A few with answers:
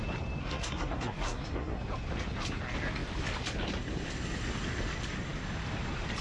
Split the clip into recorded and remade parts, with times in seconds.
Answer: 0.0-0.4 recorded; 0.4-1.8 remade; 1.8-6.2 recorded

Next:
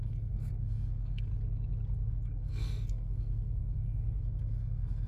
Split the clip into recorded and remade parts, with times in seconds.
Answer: 0.0-1.3 remade; 1.3-2.1 recorded; 2.1-5.1 remade

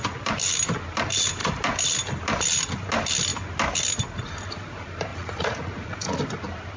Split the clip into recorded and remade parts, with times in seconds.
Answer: 0.0-5.1 recorded; 5.1-6.2 remade; 6.2-6.8 recorded

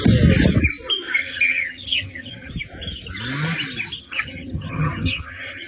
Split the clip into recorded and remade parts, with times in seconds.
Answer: 0.0-1.2 recorded; 1.2-2.5 remade; 2.5-4.0 recorded; 4.0-5.7 remade

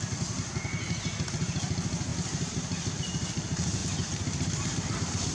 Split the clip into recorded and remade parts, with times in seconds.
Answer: 0.0-3.8 recorded; 3.8-5.3 remade